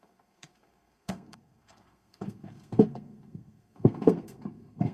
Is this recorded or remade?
remade